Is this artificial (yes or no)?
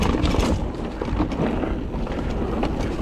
no